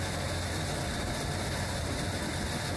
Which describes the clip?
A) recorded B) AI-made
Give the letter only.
B